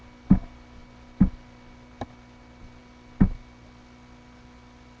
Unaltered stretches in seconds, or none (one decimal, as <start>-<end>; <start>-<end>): 0.0-5.0